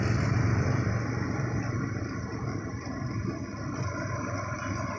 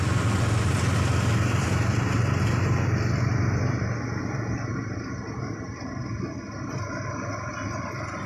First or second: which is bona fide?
second